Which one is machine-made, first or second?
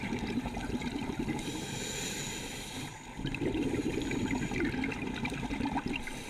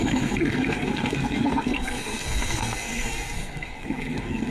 second